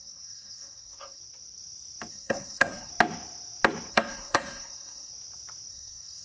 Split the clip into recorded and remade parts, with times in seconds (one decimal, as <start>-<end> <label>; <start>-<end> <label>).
0.0-1.2 remade; 1.2-2.1 recorded; 2.1-2.9 remade; 2.9-3.9 recorded; 3.9-5.1 remade; 5.1-5.7 recorded; 5.7-6.2 remade